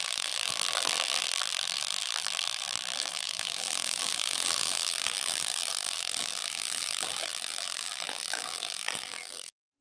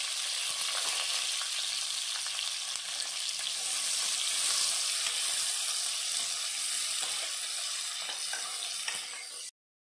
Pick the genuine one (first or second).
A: second